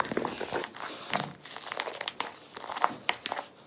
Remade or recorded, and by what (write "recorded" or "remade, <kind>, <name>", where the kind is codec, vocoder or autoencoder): recorded